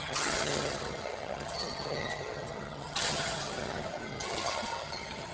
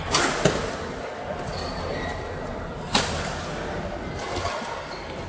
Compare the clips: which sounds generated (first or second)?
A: first